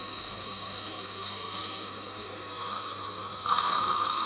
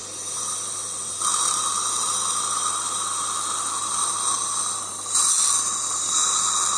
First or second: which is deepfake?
first